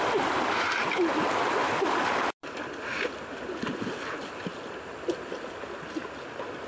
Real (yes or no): yes